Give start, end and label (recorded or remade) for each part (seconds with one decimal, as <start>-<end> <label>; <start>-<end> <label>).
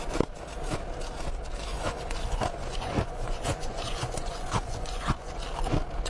0.0-1.7 recorded; 1.7-5.4 remade; 5.4-6.1 recorded